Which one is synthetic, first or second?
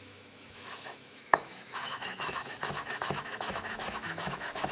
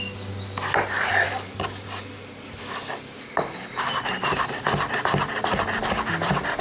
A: first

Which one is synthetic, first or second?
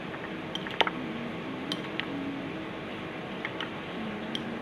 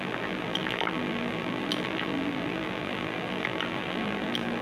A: second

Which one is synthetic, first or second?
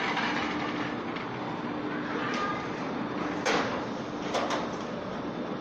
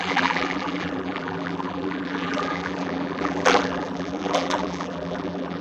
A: second